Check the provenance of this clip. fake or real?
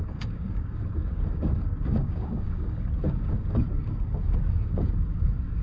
fake